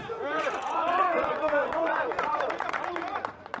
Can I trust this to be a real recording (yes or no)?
no